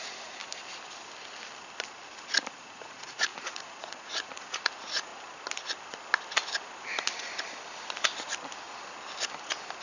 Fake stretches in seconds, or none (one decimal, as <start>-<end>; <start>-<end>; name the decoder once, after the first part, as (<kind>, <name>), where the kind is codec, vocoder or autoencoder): 0.0-0.4 (vocoder, Vocos); 2.5-5.1